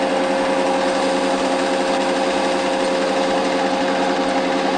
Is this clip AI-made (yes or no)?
no